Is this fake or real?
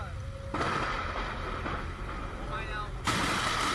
real